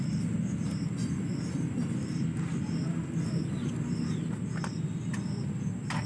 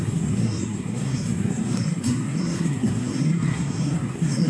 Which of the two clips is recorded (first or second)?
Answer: first